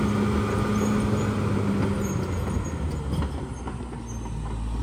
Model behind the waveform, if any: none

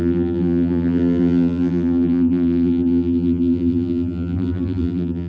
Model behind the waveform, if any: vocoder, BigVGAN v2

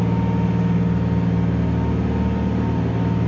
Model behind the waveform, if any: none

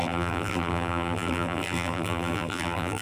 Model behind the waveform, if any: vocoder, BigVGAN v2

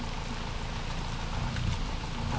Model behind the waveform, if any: none